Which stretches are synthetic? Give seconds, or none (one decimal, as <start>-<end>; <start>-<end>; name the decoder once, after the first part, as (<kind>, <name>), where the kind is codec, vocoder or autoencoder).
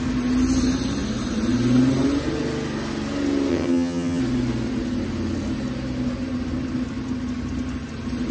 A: 3.5-4.2 (vocoder, HiFi-GAN)